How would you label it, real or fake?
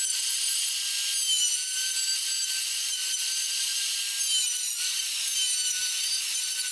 real